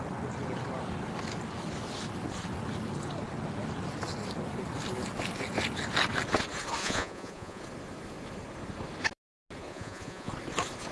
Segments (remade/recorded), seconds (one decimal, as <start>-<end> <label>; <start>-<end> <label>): 0.0-6.8 recorded; 6.8-7.6 remade; 7.6-9.7 recorded; 9.7-10.3 remade; 10.3-10.9 recorded